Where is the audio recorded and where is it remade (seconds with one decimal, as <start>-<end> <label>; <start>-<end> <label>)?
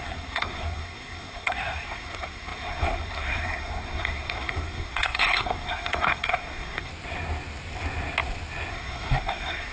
0.0-6.9 remade; 6.9-8.7 recorded; 8.7-9.7 remade